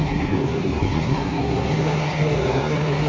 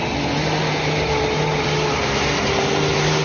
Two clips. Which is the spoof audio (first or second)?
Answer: first